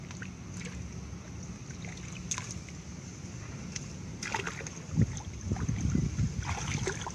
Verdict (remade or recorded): recorded